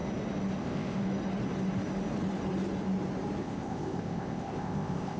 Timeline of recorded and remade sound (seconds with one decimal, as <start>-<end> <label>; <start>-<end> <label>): 0.0-0.6 recorded; 0.6-1.0 remade; 1.0-3.4 recorded; 3.4-5.2 remade